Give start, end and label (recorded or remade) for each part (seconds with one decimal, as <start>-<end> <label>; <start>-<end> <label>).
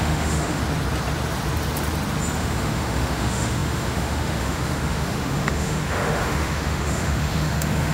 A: 0.0-0.6 remade; 0.6-2.4 recorded; 2.4-7.9 remade